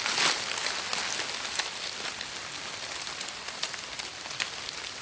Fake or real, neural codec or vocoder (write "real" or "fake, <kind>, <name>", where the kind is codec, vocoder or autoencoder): real